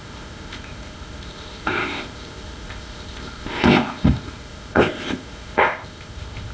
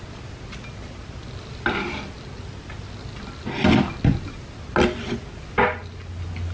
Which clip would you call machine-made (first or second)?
first